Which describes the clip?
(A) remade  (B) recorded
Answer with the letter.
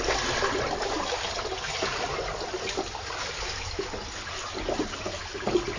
B